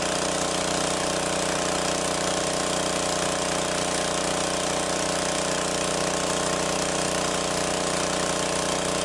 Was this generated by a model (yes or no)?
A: no